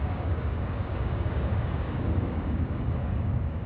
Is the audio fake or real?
fake